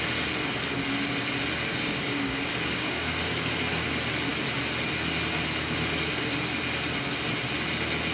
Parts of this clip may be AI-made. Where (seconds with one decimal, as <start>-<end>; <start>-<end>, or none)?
1.7-3.5